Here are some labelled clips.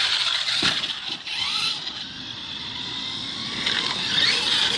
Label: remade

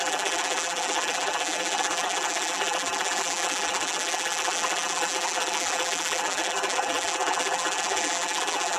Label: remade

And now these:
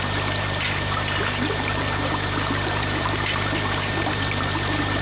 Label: remade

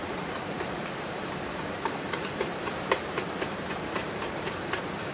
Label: remade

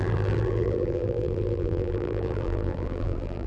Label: remade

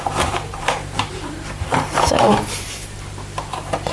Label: remade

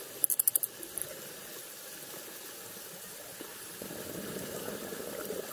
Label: recorded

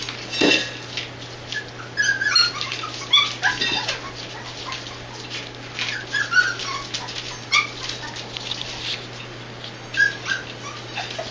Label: recorded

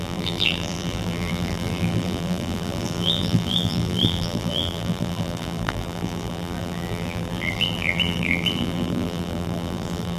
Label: remade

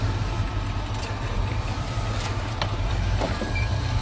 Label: remade